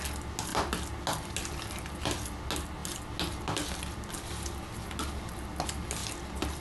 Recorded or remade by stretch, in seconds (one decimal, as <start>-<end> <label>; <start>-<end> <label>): 0.0-6.6 recorded